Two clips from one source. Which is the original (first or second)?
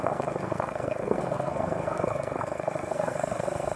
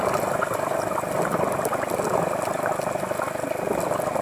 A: second